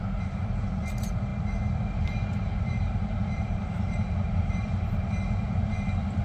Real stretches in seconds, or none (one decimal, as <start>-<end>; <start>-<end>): 1.3-2.0